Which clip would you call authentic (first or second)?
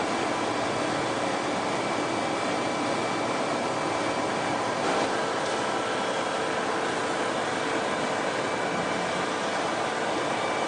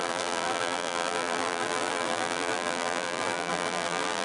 first